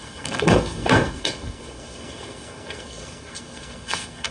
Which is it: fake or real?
fake